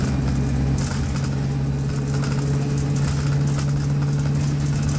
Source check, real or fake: real